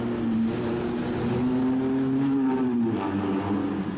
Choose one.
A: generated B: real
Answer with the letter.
B